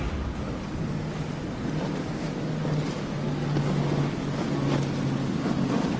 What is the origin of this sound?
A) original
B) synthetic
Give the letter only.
A